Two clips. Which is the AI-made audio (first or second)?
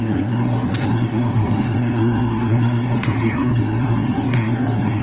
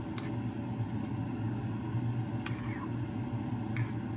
first